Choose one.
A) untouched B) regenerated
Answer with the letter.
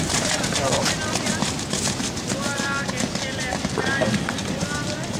A